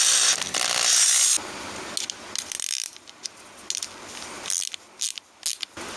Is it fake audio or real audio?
real